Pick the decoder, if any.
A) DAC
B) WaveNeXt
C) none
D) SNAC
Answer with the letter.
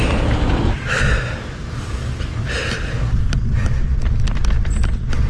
C